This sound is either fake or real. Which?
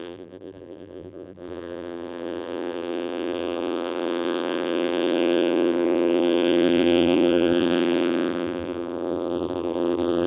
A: fake